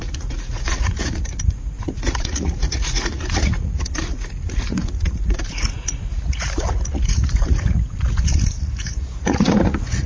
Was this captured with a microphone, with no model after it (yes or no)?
no